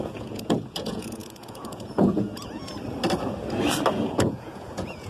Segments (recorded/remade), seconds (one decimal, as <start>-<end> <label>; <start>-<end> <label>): 0.0-2.7 remade; 2.7-3.9 recorded; 3.9-5.1 remade